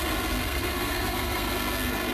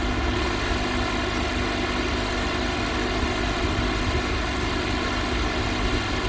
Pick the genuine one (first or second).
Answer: second